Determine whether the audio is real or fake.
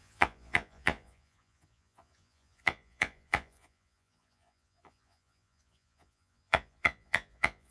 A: fake